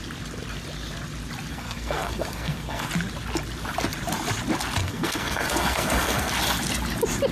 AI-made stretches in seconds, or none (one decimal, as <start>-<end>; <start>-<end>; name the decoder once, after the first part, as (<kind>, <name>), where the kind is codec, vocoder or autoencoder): 1.5-2.9 (codec, SNAC); 4.8-6.3